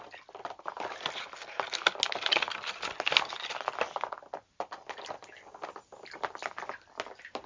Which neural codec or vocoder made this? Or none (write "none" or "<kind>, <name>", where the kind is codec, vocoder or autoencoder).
none